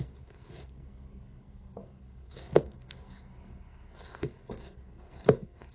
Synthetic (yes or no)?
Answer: yes